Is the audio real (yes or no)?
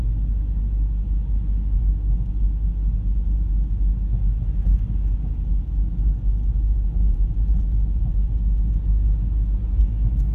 yes